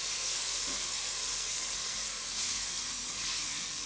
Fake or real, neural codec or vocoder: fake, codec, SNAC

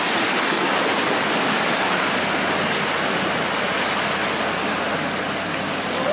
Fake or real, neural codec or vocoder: real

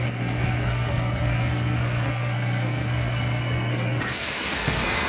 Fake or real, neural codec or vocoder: fake, codec, SNAC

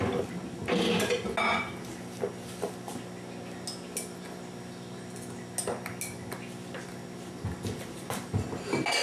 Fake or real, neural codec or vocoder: real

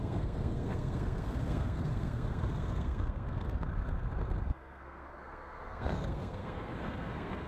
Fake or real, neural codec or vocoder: fake, codec, SNAC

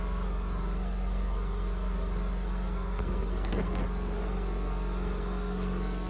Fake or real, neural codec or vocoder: fake, codec, SNAC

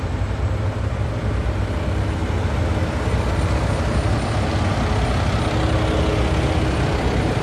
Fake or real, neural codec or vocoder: real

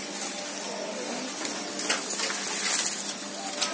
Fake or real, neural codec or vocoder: real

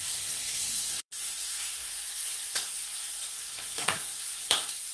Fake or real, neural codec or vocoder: fake, codec, SNAC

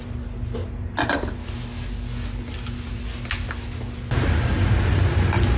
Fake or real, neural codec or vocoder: real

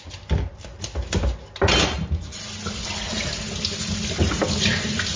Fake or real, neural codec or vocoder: real